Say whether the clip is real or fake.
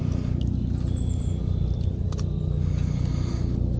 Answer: real